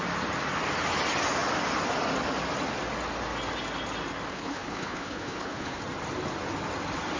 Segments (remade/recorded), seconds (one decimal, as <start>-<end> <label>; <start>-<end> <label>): 0.0-4.3 recorded; 4.3-5.8 remade; 5.8-7.2 recorded